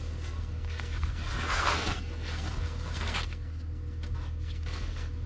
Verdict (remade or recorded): remade